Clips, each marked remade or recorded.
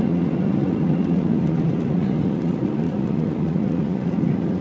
remade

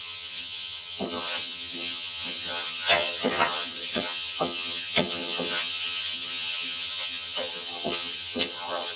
remade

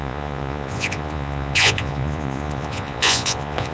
remade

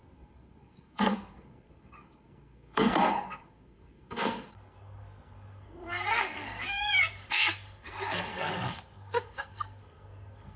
remade